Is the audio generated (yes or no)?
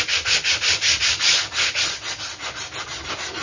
no